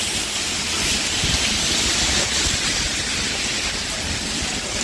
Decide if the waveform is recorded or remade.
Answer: recorded